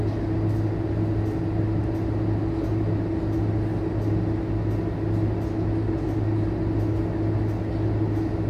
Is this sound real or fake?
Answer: real